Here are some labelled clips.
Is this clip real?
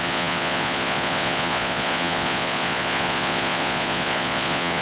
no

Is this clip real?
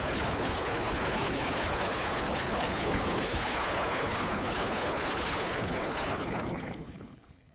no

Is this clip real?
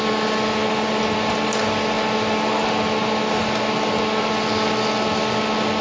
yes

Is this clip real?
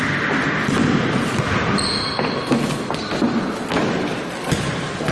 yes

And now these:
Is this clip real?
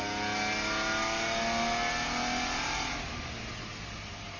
yes